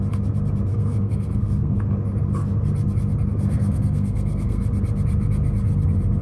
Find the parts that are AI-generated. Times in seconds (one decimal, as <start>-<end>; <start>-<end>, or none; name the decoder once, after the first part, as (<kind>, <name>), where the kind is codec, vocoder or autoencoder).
0.7-1.8 (codec, SNAC); 3.3-4.6